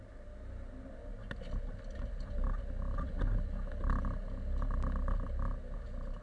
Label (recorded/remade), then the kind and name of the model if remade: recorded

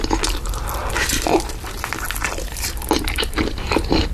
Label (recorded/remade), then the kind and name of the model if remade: remade, vocoder, BigVGAN v2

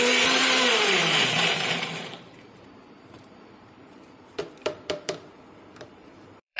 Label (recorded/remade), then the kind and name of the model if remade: remade, vocoder, BigVGAN v2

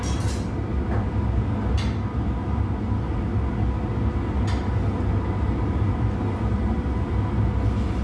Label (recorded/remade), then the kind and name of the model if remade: recorded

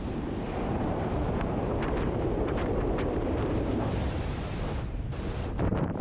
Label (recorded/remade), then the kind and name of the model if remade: remade, vocoder, BigVGAN v2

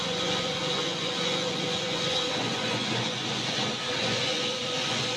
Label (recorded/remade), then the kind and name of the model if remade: remade, vocoder, Vocos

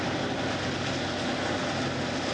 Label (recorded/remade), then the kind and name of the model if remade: recorded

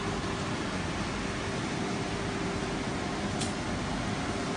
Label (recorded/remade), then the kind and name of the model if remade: recorded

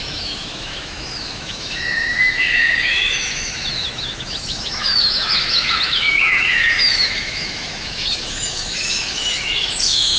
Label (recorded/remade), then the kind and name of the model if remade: remade, autoencoder, DAC-VAE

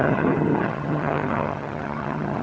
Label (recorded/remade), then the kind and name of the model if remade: remade, vocoder, HiFi-GAN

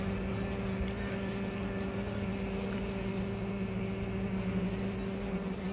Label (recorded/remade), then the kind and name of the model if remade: recorded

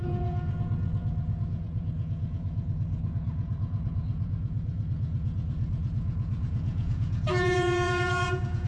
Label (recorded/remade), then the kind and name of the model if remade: remade, vocoder, Vocos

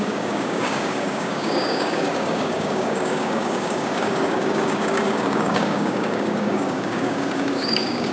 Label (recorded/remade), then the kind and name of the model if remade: remade, codec, DAC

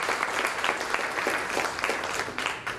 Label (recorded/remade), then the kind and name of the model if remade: recorded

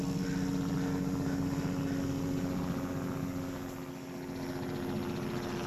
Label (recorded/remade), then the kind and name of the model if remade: recorded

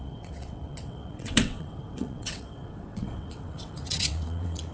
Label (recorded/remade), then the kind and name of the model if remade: remade, vocoder, WaveNeXt